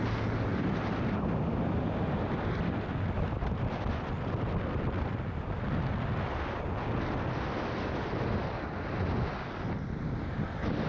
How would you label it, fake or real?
real